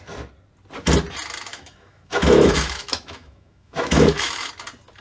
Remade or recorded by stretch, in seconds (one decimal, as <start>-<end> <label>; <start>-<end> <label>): 0.0-1.5 recorded; 1.5-4.5 remade; 4.5-5.0 recorded